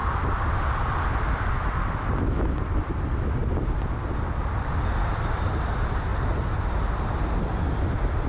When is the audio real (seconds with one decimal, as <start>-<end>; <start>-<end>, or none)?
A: 0.0-3.4; 5.6-8.3